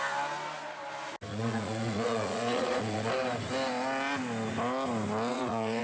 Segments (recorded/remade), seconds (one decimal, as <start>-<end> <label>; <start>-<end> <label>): 0.0-1.3 recorded; 1.3-3.1 remade; 3.1-5.3 recorded; 5.3-5.8 remade